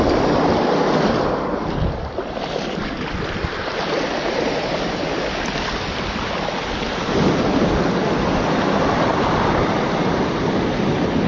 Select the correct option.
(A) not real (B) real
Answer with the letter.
B